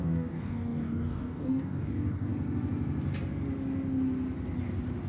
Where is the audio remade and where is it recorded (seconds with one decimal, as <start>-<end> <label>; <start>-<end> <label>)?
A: 0.0-2.3 remade; 2.3-5.1 recorded